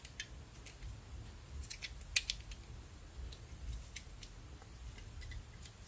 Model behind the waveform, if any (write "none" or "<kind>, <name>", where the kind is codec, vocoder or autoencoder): none